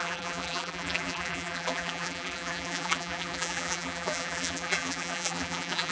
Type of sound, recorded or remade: remade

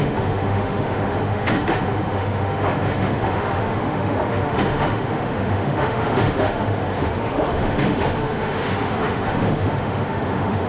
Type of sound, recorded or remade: remade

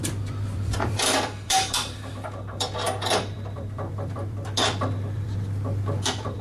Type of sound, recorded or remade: remade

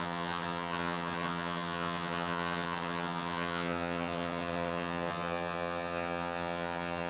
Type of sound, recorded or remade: remade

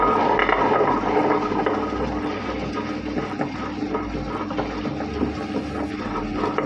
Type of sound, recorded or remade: recorded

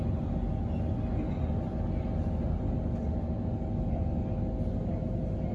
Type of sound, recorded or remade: recorded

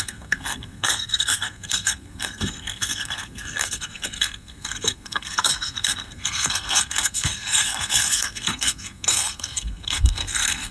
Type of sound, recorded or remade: remade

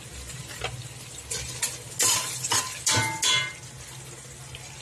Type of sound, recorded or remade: recorded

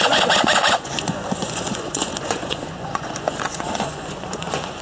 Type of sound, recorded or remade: remade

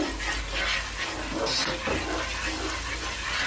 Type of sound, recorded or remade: recorded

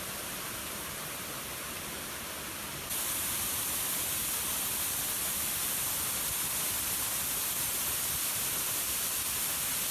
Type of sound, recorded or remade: recorded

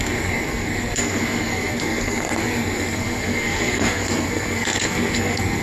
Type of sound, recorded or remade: remade